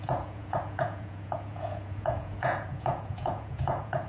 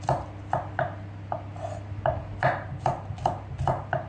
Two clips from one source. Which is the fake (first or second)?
first